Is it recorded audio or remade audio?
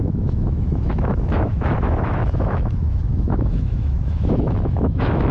remade